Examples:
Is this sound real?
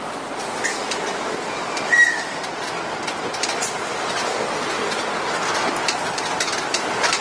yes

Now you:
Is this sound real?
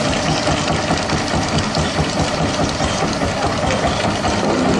yes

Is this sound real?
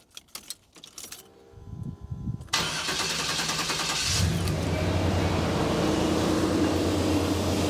yes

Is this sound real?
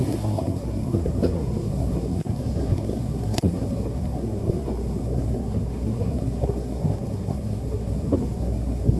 no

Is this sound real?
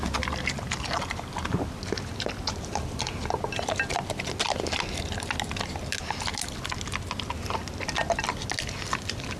yes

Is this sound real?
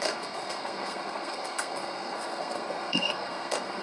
no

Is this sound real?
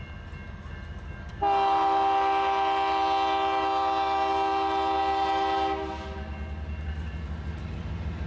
yes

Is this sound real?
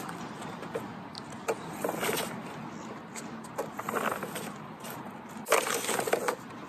yes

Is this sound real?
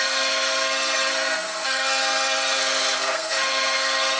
no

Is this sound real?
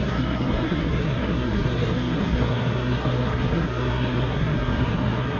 no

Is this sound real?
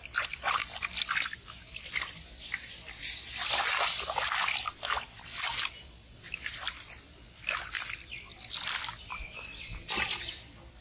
yes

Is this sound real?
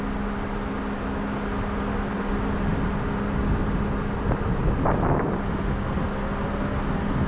yes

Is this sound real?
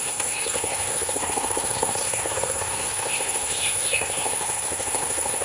no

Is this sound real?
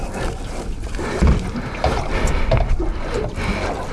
yes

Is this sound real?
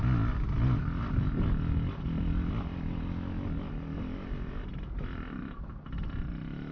yes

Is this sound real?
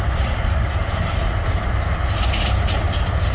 yes